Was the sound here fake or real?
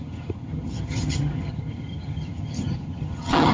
fake